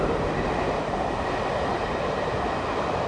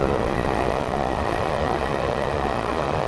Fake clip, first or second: second